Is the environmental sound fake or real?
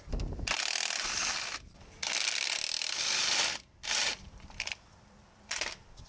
fake